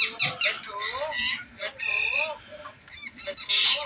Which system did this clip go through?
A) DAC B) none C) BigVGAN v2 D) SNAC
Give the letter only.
B